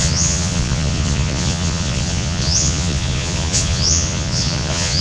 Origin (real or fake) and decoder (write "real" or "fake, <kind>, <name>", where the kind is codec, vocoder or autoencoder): fake, vocoder, Vocos